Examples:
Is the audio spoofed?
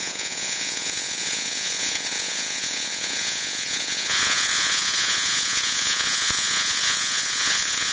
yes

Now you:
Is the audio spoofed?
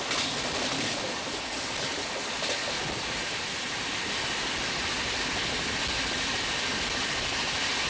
no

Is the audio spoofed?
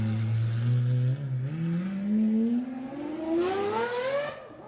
no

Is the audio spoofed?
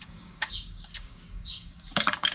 yes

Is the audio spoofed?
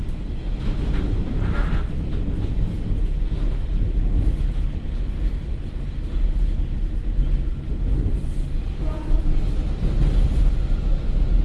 no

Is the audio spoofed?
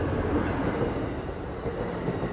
no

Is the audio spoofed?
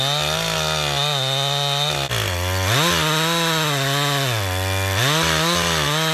no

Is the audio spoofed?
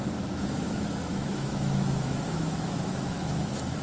yes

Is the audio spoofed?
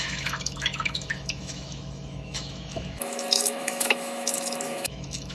yes